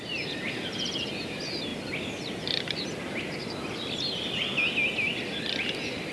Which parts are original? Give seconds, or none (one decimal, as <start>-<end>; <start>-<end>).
0.0-6.1